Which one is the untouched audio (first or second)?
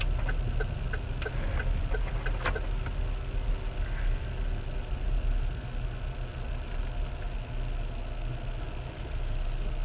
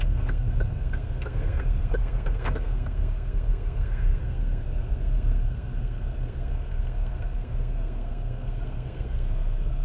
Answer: first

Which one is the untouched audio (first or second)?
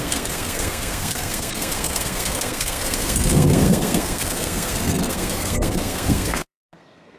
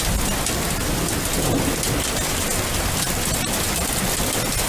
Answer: second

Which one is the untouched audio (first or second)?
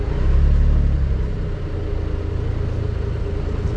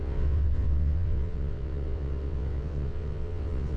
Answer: first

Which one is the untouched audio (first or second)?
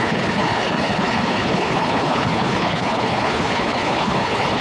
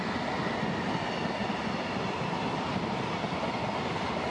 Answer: second